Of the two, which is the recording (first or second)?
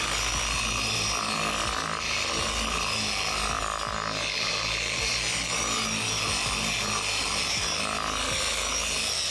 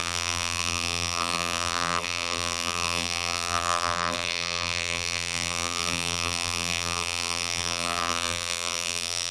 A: first